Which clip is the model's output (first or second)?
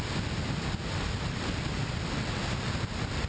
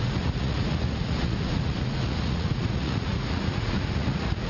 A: second